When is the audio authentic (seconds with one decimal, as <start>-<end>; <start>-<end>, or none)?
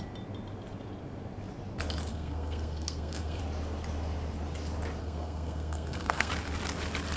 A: 0.0-2.1; 3.4-5.0; 6.3-7.2